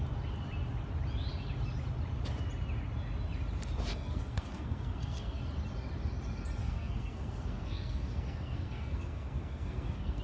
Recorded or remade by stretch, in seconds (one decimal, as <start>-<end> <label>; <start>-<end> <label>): 0.0-3.9 recorded; 3.9-5.4 remade; 5.4-6.6 recorded; 6.6-10.2 remade